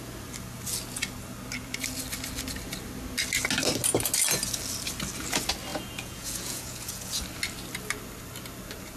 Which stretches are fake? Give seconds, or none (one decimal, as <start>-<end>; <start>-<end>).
5.7-7.2